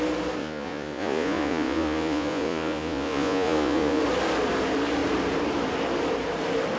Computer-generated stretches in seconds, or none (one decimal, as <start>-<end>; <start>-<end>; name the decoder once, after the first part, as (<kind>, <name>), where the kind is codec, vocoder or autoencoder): 0.4-4.0 (vocoder, Vocos)